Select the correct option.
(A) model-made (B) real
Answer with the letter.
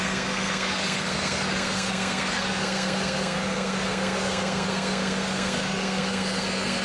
A